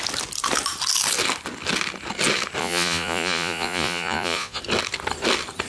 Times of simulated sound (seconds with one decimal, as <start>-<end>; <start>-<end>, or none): 2.6-4.6